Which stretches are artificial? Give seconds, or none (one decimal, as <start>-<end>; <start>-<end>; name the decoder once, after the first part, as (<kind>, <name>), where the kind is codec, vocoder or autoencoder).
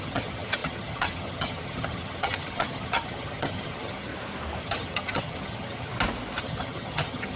0.0-4.1 (vocoder, HiFi-GAN); 4.6-5.9; 6.4-7.4